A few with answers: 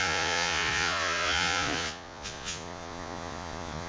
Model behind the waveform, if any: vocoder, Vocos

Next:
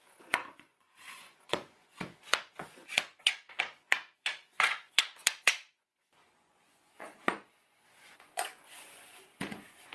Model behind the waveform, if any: vocoder, Vocos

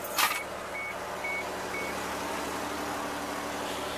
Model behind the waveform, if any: none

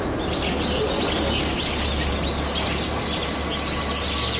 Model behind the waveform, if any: none